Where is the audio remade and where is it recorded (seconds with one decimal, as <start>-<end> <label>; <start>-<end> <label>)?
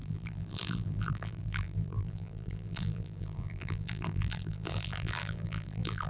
0.0-6.1 remade